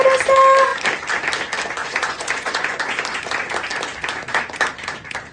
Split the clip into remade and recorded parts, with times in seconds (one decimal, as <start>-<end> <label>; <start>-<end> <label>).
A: 0.0-1.8 recorded; 1.8-2.8 remade; 2.8-5.3 recorded